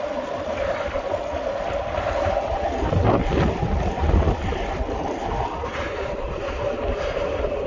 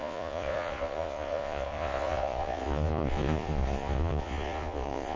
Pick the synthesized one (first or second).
second